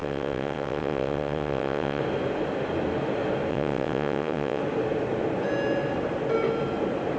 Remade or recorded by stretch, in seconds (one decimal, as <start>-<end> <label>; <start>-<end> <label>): 0.0-2.0 remade; 2.0-3.5 recorded; 3.5-4.6 remade; 4.6-7.2 recorded